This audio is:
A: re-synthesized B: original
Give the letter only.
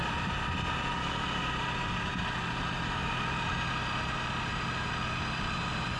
B